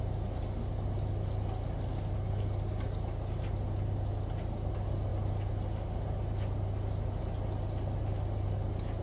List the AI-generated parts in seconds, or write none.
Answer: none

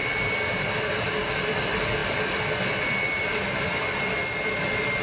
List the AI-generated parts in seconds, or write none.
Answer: none

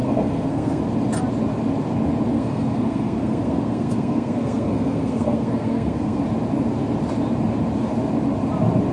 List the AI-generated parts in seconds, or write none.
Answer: 0.0-0.8 (codec, SNAC); 2.3-6.2